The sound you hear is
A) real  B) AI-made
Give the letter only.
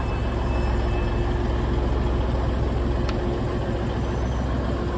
A